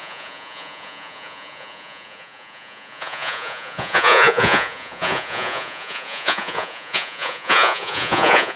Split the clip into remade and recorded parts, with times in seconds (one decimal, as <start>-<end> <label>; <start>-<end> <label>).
0.0-8.6 remade